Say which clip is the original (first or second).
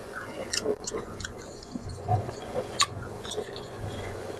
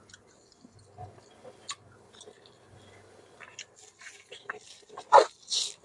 second